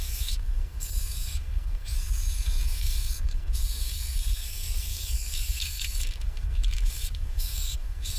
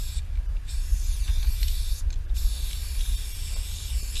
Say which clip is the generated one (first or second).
first